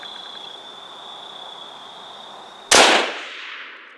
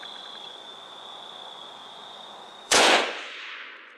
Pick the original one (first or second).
first